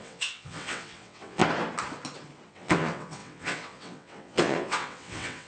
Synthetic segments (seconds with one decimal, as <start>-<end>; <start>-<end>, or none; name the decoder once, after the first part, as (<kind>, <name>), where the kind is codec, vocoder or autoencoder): 0.0-1.4 (vocoder, WaveNeXt); 2.5-5.5